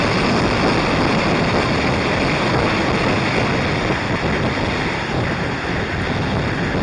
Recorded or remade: recorded